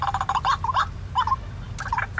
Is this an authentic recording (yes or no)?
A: yes